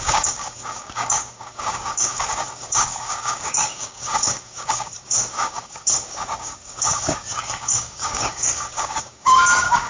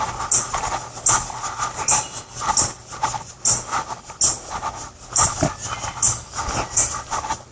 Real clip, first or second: second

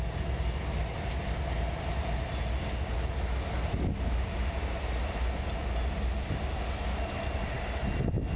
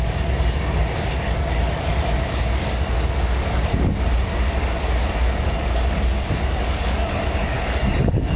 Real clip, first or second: first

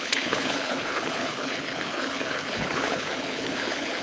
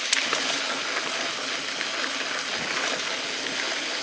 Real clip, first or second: second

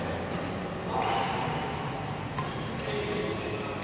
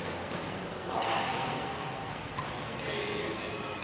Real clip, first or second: first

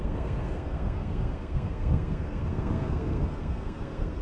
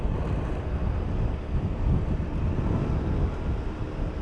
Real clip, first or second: second